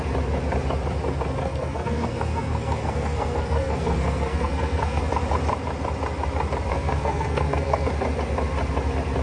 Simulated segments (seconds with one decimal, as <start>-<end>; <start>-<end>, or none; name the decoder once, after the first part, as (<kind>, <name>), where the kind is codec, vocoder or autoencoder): 1.4-5.0 (codec, SNAC); 6.7-7.9